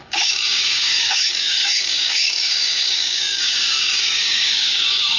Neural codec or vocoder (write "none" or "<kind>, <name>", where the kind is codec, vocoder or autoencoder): codec, DAC